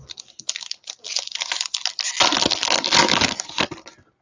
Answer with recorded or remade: recorded